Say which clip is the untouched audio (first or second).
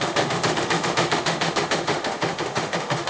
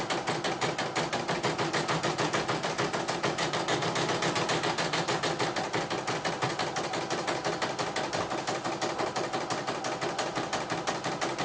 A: second